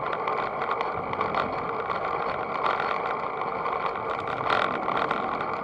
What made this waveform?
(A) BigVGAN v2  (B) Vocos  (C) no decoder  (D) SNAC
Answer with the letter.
C